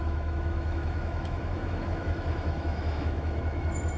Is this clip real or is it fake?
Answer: fake